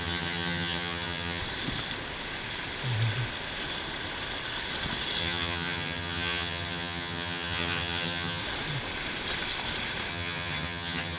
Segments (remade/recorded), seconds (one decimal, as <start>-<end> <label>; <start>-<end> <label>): 0.0-1.4 remade; 1.4-5.2 recorded; 5.2-8.4 remade; 8.4-10.1 recorded; 10.1-11.2 remade